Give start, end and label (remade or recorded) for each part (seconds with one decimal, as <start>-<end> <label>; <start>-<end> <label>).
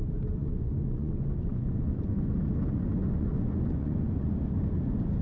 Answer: 0.0-0.4 recorded; 0.4-2.4 remade; 2.4-3.0 recorded; 3.0-4.3 remade; 4.3-5.2 recorded